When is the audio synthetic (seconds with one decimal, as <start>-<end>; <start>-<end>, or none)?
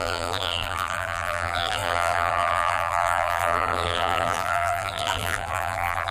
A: 0.0-6.1